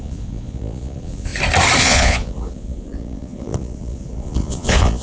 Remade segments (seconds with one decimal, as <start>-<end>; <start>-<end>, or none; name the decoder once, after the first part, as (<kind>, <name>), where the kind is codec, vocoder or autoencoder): 0.0-1.3 (vocoder, Vocos); 1.8-5.0